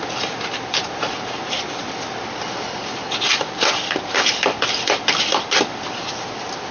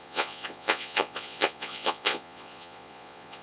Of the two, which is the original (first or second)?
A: first